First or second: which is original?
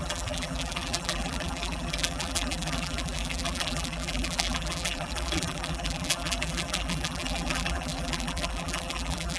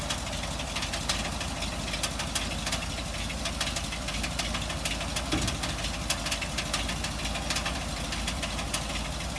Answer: second